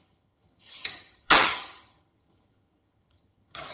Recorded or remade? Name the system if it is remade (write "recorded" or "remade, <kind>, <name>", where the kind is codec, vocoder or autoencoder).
remade, vocoder, HiFi-GAN